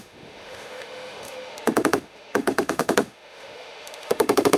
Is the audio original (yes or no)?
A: no